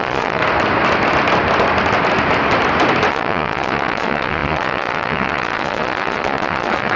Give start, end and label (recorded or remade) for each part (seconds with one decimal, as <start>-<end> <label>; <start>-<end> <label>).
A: 0.0-0.4 remade; 0.4-3.1 recorded; 3.1-7.0 remade